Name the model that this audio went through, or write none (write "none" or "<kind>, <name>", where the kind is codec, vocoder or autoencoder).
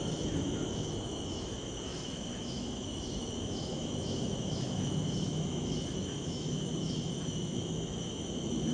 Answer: autoencoder, DAC-VAE